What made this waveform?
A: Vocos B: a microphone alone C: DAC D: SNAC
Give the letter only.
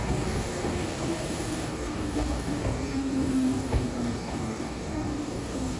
C